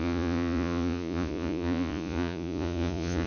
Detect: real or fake fake